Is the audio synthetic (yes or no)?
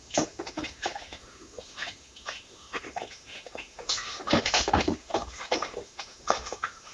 yes